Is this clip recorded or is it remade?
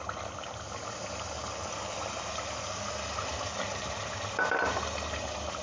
recorded